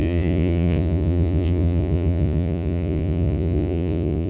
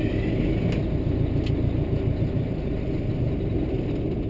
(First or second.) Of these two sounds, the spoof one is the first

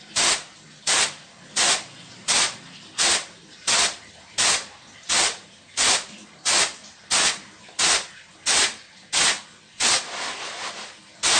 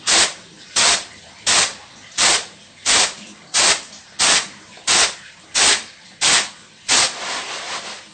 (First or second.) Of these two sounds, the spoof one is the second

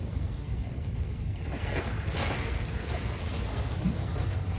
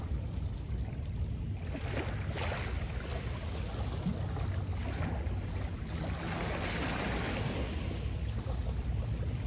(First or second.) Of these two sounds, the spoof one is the first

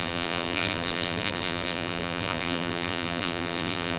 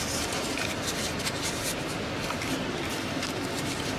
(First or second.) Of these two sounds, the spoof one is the first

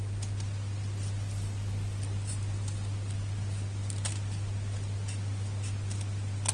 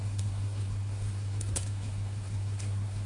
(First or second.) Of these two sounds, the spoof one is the second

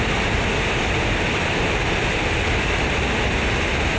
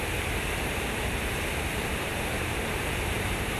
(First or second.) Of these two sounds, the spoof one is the second